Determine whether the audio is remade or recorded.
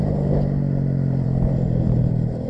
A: remade